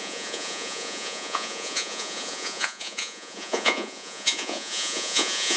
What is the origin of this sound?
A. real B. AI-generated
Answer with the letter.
B